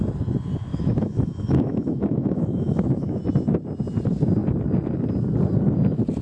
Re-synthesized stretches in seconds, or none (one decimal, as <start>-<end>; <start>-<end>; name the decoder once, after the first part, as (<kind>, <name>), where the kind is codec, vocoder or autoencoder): 0.7-3.2 (autoencoder, DAC-VAE)